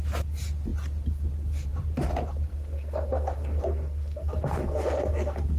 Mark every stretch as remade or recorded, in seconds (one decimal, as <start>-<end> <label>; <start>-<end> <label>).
0.0-2.5 recorded; 2.5-5.6 remade